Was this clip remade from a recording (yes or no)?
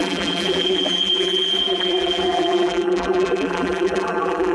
yes